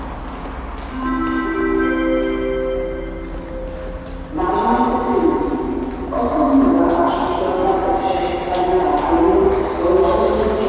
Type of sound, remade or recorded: recorded